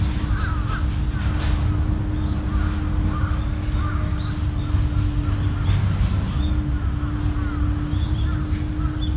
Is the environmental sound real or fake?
real